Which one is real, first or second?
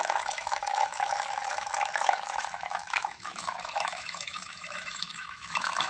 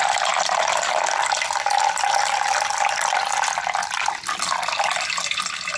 second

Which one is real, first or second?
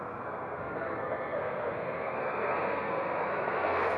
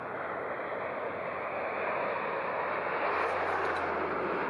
second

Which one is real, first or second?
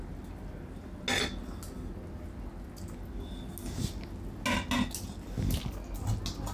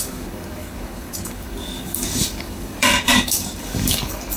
first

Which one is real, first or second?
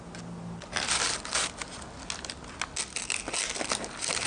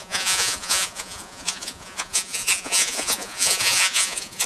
first